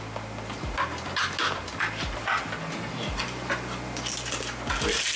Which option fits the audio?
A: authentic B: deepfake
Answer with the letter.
A